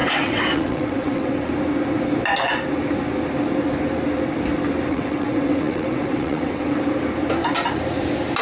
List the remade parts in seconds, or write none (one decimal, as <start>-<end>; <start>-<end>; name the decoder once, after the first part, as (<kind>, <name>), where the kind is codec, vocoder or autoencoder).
0.0-1.5 (vocoder, WaveNeXt); 4.9-6.8